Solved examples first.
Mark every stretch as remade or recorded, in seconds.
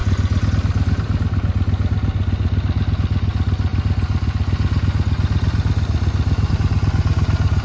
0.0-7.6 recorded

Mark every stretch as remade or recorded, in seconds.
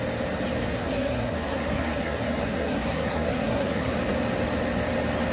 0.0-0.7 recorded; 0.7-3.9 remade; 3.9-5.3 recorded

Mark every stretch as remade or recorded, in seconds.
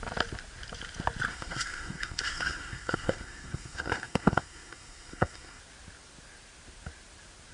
0.0-1.3 recorded; 1.3-5.6 remade; 5.6-7.5 recorded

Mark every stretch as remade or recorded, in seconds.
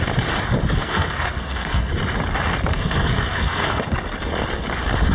0.0-0.8 recorded; 0.8-1.9 remade; 1.9-2.7 recorded; 2.7-3.8 remade; 3.8-5.1 recorded